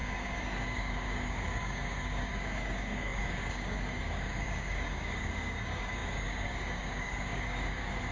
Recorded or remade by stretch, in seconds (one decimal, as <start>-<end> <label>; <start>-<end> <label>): 0.0-8.1 remade